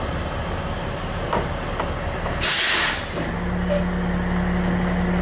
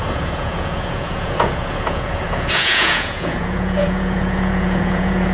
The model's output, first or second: second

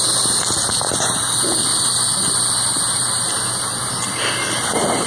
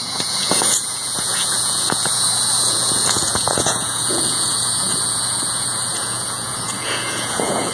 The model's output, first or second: second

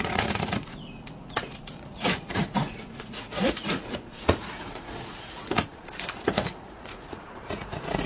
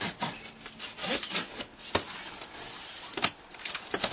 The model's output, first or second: first